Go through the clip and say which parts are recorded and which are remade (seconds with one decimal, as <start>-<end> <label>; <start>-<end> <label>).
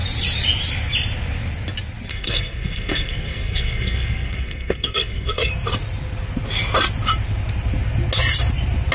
0.0-2.1 recorded; 2.1-5.5 remade; 5.5-8.9 recorded